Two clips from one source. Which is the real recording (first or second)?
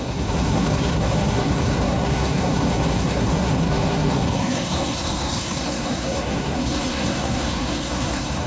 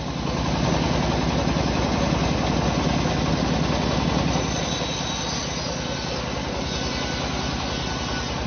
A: second